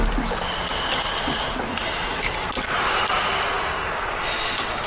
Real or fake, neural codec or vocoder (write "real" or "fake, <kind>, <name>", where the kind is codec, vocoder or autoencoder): real